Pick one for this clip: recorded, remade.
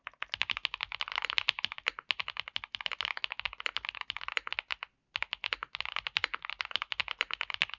recorded